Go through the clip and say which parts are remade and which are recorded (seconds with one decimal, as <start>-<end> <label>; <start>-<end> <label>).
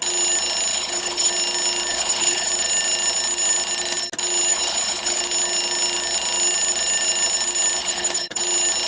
0.0-0.7 recorded; 0.7-1.3 remade; 1.3-1.9 recorded; 1.9-2.5 remade; 2.5-4.5 recorded; 4.5-5.2 remade; 5.2-7.8 recorded; 7.8-8.4 remade; 8.4-8.9 recorded